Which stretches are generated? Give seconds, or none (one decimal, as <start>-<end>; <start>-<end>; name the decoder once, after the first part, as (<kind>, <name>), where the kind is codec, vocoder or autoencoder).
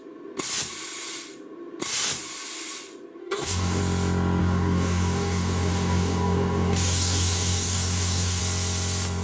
3.2-3.8 (codec, DAC); 4.4-8.4